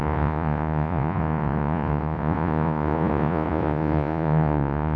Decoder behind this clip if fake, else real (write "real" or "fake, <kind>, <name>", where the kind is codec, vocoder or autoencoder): fake, vocoder, Vocos